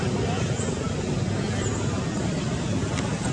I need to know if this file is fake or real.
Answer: real